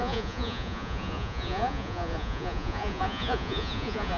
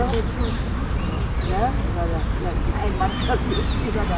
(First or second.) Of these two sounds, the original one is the second